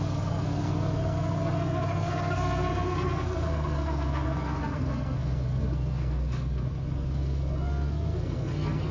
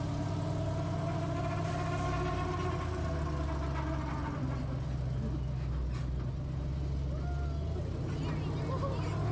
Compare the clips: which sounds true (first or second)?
second